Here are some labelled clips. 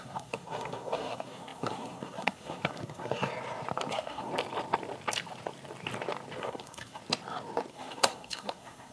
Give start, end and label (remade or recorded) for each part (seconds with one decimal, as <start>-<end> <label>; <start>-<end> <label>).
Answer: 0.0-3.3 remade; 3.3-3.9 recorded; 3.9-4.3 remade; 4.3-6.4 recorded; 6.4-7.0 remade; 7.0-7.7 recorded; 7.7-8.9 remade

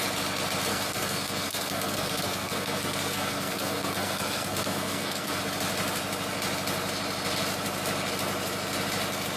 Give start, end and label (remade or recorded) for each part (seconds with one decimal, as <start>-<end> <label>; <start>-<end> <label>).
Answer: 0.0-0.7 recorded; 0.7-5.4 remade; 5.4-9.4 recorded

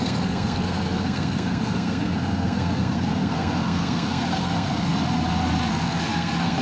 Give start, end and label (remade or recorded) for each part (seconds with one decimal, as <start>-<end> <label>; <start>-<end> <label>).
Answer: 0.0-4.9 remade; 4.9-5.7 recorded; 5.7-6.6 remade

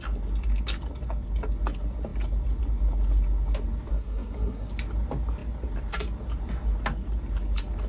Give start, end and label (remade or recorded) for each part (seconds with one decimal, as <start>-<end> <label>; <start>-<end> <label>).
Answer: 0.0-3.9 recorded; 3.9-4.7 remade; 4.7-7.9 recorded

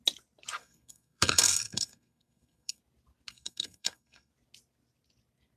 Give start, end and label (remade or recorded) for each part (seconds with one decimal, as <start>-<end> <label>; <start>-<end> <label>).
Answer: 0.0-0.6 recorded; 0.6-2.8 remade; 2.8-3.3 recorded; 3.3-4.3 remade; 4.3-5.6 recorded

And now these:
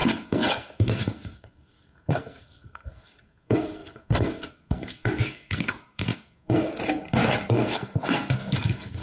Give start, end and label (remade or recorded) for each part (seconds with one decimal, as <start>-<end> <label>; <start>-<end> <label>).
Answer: 0.0-6.8 remade; 6.8-7.5 recorded; 7.5-9.0 remade

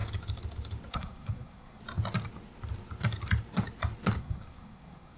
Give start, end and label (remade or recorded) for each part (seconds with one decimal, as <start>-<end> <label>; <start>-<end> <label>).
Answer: 0.0-0.9 recorded; 0.9-1.8 remade; 1.8-4.2 recorded; 4.2-5.2 remade

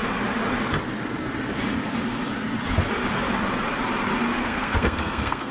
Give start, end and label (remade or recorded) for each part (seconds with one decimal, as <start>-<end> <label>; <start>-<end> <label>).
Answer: 0.0-4.4 recorded; 4.4-5.5 remade